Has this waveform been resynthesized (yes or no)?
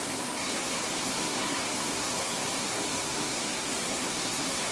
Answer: yes